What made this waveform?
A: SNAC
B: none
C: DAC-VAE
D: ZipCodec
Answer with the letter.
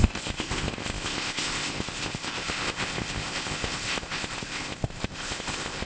D